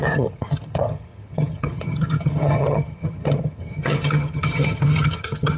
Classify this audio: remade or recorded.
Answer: remade